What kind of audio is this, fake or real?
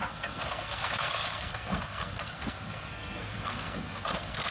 fake